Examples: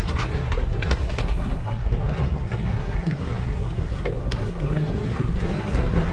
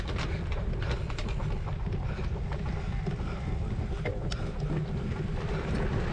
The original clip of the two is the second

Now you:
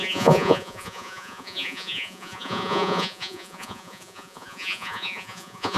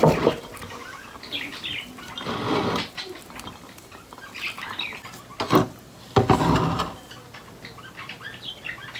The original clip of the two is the second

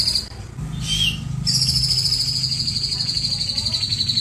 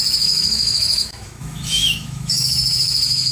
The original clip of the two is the first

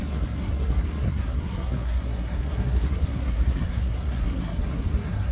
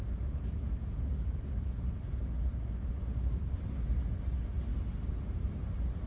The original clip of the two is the second